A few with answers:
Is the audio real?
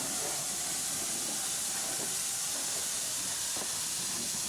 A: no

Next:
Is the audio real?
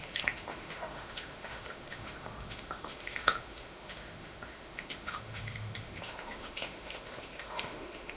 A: no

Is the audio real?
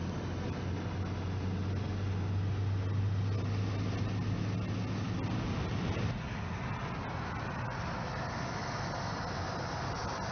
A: yes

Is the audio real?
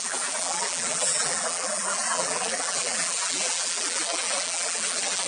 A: no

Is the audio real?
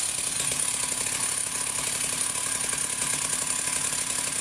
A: yes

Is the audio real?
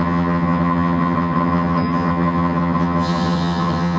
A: no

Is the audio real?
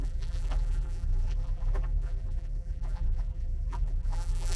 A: no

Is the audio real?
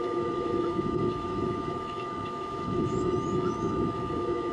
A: no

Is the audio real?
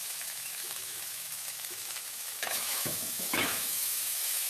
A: no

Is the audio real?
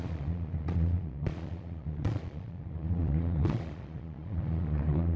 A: no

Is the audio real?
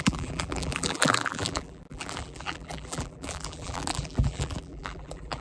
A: no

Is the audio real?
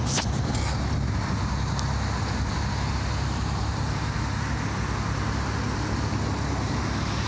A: yes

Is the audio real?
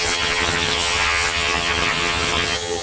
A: no